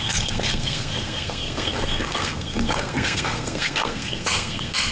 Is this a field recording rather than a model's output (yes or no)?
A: no